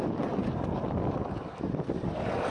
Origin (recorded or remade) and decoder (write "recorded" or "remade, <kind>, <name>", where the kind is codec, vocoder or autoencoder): recorded